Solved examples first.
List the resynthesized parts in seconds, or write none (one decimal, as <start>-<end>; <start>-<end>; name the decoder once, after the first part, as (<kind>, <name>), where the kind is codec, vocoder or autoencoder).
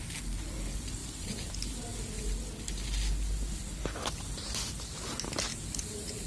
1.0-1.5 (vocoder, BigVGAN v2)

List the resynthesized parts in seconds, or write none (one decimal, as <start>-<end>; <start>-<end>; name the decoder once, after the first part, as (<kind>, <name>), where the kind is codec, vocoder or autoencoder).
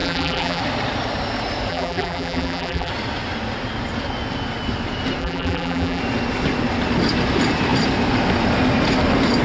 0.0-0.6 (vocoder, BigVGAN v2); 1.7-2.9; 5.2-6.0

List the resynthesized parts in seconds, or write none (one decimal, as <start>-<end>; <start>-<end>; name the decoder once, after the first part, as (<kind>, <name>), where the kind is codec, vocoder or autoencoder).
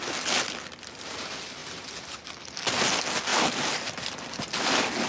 3.3-4.4 (vocoder, BigVGAN v2)